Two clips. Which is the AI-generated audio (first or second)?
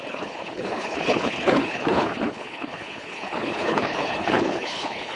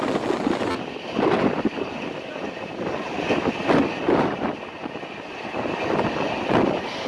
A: first